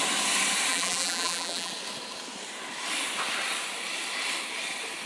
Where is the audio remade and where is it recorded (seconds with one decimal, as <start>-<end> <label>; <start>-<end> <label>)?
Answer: 0.0-0.7 recorded; 0.7-1.7 remade; 1.7-5.1 recorded